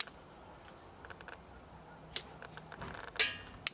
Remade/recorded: recorded